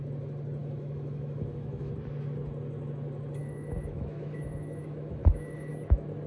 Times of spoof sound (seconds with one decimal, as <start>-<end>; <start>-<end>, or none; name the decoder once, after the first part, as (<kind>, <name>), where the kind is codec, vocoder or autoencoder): 0.6-1.9 (autoencoder, DAC-VAE); 3.4-5.7